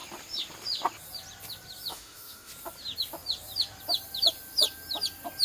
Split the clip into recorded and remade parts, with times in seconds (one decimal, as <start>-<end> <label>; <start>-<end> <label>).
0.0-1.9 recorded; 1.9-2.5 remade; 2.5-5.4 recorded